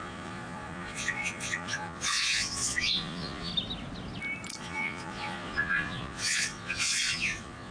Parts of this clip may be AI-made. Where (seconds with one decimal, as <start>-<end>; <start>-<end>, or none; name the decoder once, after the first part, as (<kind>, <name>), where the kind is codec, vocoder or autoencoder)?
0.0-3.5 (vocoder, Vocos); 4.6-7.7